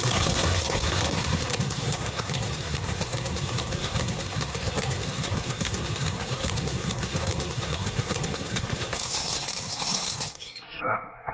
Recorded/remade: remade